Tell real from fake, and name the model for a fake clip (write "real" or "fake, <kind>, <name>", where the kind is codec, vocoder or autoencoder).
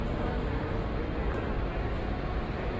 real